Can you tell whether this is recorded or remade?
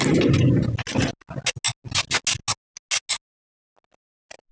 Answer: recorded